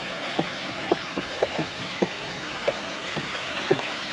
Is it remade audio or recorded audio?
remade